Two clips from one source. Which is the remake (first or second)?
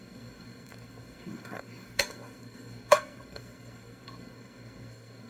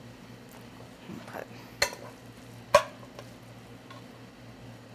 first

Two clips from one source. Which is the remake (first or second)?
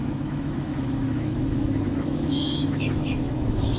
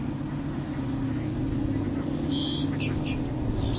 first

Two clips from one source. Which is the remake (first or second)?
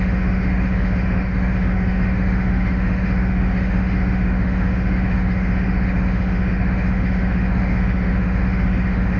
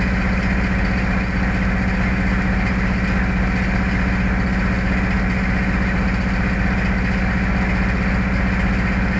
first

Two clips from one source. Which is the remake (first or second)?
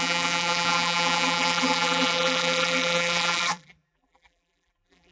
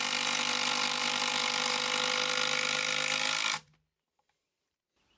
first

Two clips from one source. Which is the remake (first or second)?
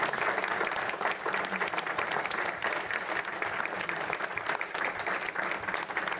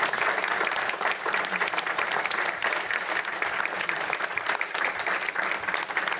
second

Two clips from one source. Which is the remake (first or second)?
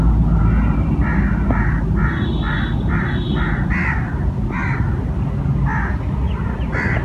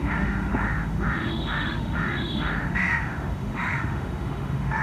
second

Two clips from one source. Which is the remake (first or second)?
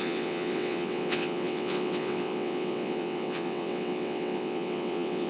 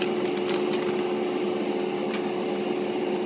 first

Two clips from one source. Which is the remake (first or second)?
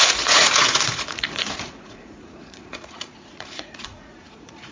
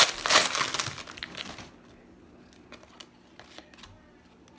first